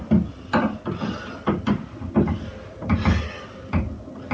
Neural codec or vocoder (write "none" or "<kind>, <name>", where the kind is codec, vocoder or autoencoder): none